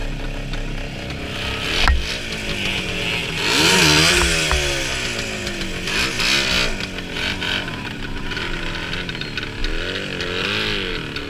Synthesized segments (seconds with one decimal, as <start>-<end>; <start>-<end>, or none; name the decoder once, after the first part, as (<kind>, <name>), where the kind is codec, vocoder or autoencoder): none